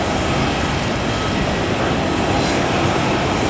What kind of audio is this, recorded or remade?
recorded